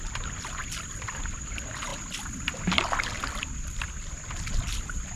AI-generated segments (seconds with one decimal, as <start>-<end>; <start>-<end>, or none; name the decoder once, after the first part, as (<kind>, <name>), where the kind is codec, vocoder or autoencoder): none